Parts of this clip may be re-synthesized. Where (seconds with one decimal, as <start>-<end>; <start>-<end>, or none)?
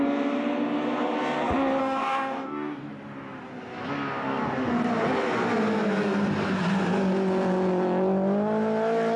1.8-2.9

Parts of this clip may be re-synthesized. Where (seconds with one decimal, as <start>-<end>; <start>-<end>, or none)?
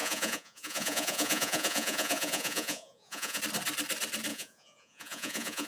0.0-3.4; 4.3-5.7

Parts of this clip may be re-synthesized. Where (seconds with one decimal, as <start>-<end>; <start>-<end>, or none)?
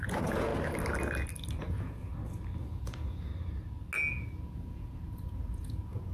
0.0-0.5; 1.6-2.1; 2.6-3.3; 4.1-6.1